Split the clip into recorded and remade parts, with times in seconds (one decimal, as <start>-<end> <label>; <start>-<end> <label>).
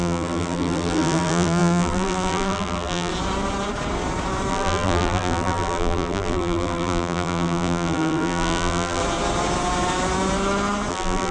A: 0.0-3.1 remade; 3.1-4.5 recorded; 4.5-9.0 remade; 9.0-10.9 recorded; 10.9-11.3 remade